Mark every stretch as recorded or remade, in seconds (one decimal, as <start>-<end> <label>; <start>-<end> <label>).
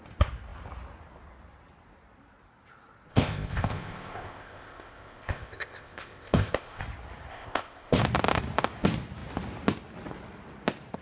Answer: 0.0-3.1 recorded; 3.1-6.8 remade; 6.8-7.3 recorded; 7.3-8.0 remade; 8.0-11.0 recorded